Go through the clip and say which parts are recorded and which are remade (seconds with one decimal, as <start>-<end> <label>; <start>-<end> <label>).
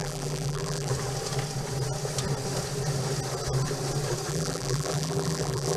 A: 0.0-0.9 remade; 0.9-4.3 recorded; 4.3-5.8 remade